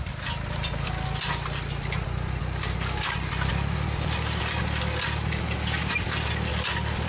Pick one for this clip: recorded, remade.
recorded